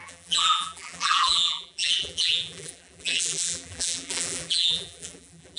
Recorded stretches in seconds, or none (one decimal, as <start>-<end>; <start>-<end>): none